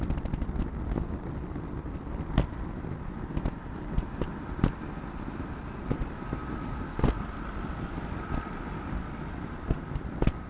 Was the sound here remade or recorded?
remade